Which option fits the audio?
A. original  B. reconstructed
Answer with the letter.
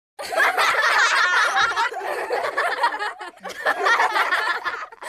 A